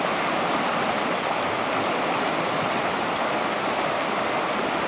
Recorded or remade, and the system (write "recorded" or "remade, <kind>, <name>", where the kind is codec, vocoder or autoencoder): recorded